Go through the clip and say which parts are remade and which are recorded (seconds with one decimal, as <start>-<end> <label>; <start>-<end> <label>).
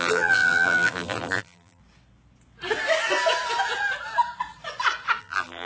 0.0-1.8 remade; 1.8-5.2 recorded; 5.2-5.7 remade